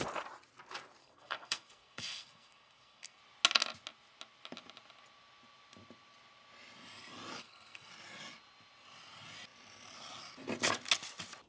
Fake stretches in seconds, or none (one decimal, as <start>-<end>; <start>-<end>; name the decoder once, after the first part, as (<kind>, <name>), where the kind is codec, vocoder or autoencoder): 1.0-3.2 (codec, SNAC); 7.4-7.9